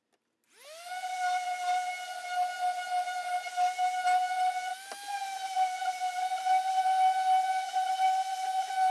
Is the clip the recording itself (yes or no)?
yes